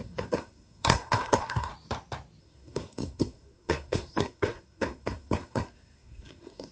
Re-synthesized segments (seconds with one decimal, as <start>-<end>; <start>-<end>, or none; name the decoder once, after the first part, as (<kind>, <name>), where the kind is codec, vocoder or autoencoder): 0.0-1.7 (codec, SNAC); 2.4-6.7